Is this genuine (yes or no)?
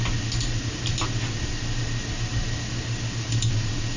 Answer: yes